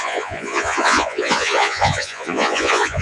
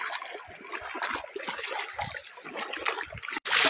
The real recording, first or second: second